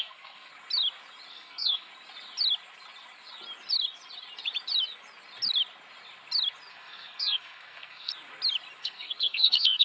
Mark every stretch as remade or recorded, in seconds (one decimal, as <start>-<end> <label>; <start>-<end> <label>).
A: 0.0-0.5 remade; 0.5-1.3 recorded; 1.3-1.9 remade; 1.9-6.7 recorded; 6.7-8.1 remade; 8.1-8.8 recorded; 8.8-9.8 remade